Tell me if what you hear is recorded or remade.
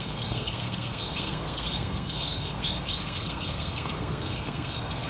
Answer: remade